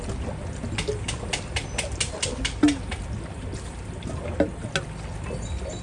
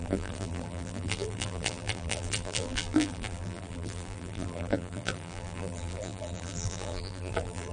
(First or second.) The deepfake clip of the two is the second